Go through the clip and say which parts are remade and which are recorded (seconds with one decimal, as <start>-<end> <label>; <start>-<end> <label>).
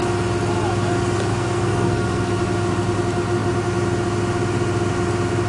0.0-1.3 recorded; 1.3-2.3 remade; 2.3-5.5 recorded